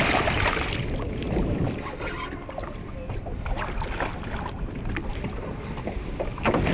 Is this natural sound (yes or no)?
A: yes